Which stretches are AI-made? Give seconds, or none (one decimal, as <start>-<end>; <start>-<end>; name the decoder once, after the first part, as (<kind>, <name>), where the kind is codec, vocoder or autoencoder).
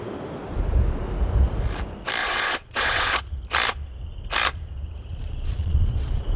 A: 2.2-3.3 (vocoder, Vocos); 5.1-6.4